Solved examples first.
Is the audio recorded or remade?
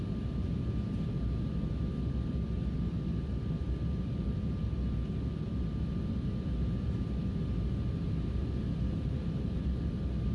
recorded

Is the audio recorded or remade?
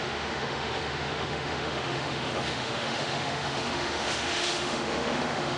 remade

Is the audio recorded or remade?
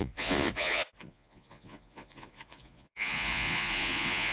remade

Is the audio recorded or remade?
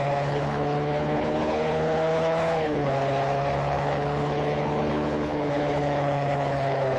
remade